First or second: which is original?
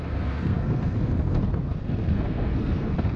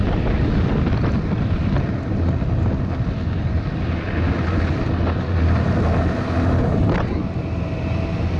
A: second